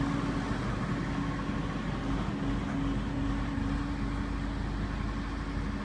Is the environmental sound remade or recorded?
recorded